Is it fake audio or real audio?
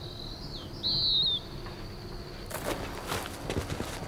real